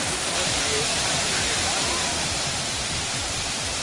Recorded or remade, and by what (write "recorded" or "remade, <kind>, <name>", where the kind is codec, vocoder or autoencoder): recorded